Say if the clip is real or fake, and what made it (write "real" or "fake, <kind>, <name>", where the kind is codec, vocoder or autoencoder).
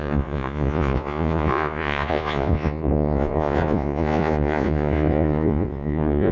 fake, vocoder, Vocos